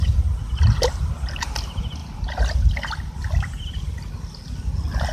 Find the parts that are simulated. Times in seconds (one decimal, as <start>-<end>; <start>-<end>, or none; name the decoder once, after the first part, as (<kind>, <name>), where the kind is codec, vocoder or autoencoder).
none

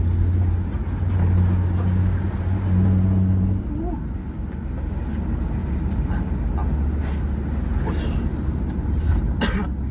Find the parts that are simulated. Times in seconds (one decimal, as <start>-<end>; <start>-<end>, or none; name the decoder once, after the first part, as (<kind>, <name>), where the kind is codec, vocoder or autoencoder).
5.6-6.3 (vocoder, BigVGAN v2); 8.3-9.2

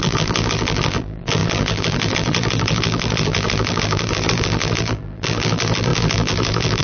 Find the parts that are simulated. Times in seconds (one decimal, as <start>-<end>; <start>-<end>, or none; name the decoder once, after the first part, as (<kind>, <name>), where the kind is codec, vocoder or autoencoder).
0.0-6.8 (vocoder, BigVGAN v2)

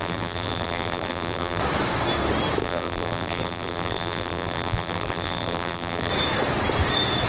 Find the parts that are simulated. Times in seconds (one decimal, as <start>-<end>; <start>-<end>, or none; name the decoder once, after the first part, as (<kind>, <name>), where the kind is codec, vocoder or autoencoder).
0.0-1.6 (vocoder, BigVGAN v2); 2.6-6.1